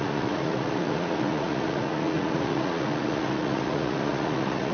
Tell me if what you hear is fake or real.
fake